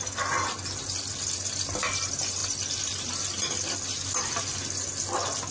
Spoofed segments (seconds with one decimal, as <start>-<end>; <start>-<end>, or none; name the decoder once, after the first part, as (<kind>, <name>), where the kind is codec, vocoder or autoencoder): none